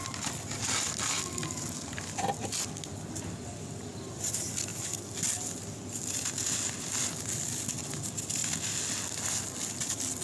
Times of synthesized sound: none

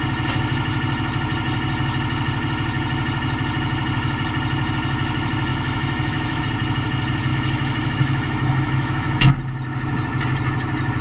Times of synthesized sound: 5.5-6.4 (autoencoder, DAC-VAE); 7.3-9.3